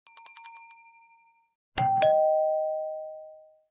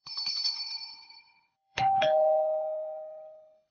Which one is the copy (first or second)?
second